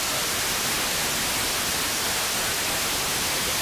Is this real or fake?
real